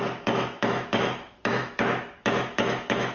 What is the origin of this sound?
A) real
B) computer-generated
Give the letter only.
B